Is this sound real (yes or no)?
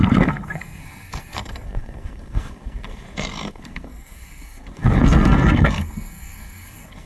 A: no